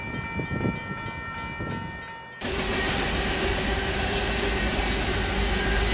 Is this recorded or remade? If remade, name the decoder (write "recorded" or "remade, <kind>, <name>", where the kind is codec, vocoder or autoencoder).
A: recorded